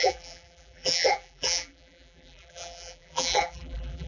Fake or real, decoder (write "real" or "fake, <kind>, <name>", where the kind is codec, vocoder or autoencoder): fake, vocoder, BigVGAN v2